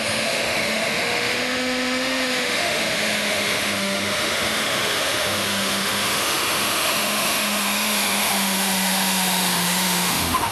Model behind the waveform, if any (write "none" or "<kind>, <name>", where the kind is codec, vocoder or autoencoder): autoencoder, DAC-VAE